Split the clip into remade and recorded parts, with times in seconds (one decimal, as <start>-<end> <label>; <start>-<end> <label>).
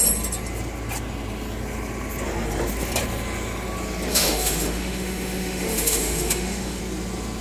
0.0-4.1 recorded; 4.1-6.8 remade; 6.8-7.4 recorded